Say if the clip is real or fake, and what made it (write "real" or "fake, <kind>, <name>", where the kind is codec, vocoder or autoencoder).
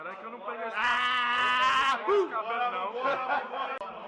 real